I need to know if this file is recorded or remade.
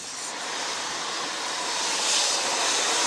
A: recorded